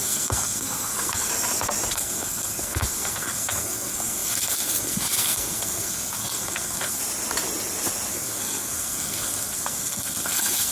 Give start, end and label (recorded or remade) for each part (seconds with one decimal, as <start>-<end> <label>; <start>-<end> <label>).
0.0-1.3 remade; 1.3-1.9 recorded; 1.9-7.0 remade; 7.0-8.1 recorded; 8.1-10.7 remade

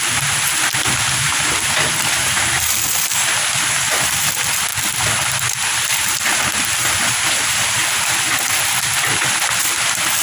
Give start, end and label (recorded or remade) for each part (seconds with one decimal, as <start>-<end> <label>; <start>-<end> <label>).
0.0-10.2 recorded

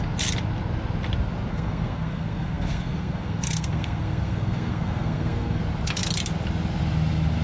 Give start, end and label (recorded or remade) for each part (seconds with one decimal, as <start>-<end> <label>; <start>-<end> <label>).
0.0-1.5 recorded; 1.5-5.6 remade; 5.6-7.4 recorded

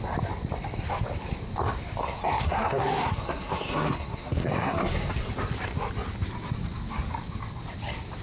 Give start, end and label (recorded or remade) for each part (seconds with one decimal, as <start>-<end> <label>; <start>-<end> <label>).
0.0-2.0 recorded; 2.0-5.1 remade; 5.1-8.2 recorded

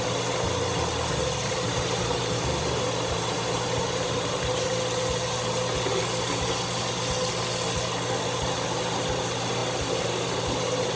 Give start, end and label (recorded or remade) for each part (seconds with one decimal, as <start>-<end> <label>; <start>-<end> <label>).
0.0-1.2 recorded; 1.2-4.7 remade; 4.7-11.0 recorded

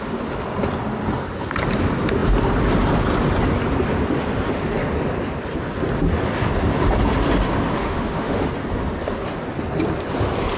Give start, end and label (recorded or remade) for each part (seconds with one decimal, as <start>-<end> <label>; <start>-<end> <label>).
0.0-7.8 recorded; 7.8-8.5 remade; 8.5-10.6 recorded

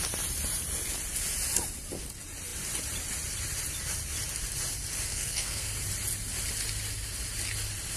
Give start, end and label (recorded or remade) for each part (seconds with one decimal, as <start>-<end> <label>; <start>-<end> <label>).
0.0-5.1 recorded; 5.1-5.7 remade; 5.7-8.0 recorded

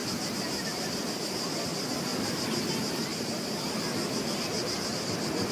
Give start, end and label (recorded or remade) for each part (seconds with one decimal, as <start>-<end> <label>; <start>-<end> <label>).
0.0-5.5 recorded